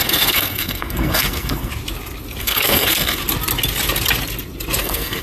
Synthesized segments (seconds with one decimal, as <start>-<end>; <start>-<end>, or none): 0.0-1.7; 2.4-3.2; 4.8-5.2